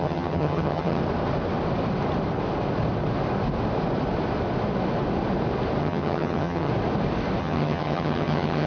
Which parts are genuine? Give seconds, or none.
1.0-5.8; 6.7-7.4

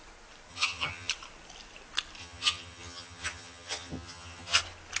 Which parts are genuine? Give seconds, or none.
0.0-0.5; 1.1-2.2; 4.6-5.0

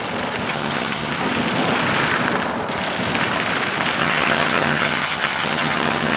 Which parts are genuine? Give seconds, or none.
0.0-0.5; 1.1-4.0

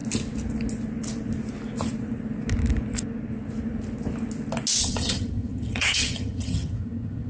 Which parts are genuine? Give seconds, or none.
0.0-4.8

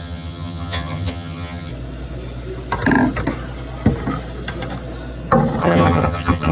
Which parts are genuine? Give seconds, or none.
1.7-5.6

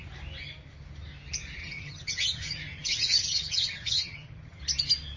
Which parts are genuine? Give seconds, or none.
0.0-1.6; 4.6-5.2

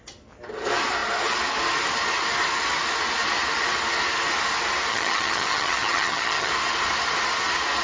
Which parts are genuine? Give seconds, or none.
0.0-4.9; 6.5-7.8

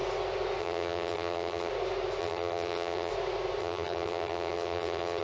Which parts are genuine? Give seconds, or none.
0.0-0.6; 1.7-2.2; 3.1-3.6